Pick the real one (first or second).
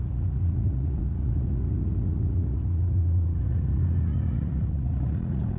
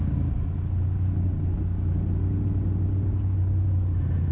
second